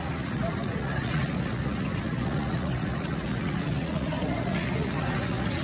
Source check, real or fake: fake